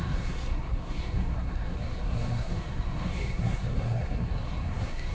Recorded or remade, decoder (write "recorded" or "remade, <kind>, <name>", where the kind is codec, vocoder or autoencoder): remade, codec, SNAC